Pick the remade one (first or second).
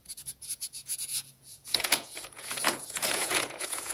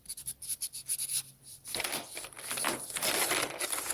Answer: first